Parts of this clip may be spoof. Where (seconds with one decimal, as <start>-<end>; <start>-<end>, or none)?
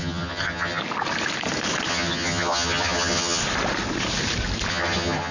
0.0-0.8; 1.9-3.4; 4.7-5.3